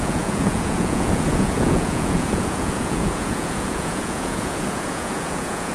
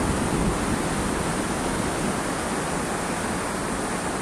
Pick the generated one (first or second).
first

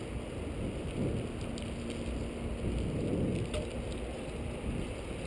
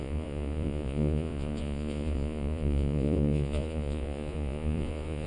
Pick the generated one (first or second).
second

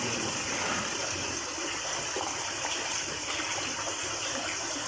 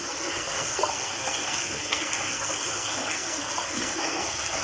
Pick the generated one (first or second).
second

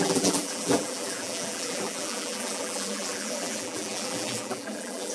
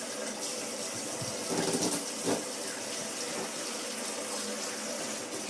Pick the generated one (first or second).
first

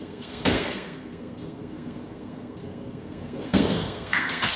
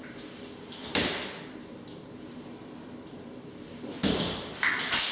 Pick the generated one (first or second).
first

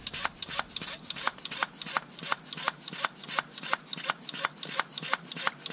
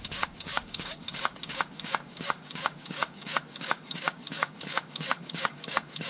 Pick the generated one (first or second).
second